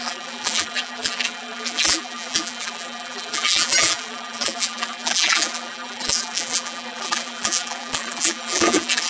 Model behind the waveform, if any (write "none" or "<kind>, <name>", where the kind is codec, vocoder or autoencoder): vocoder, BigVGAN v2